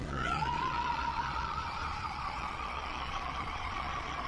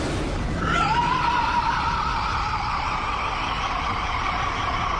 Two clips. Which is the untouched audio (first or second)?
second